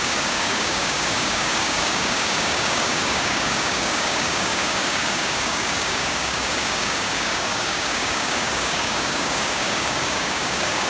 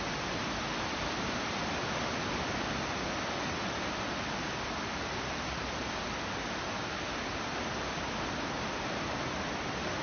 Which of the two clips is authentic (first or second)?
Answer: second